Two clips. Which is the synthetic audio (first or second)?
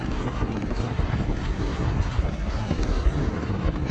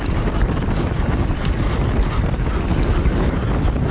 first